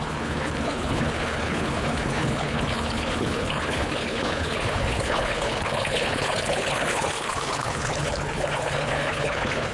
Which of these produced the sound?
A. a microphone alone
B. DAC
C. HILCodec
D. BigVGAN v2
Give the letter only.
C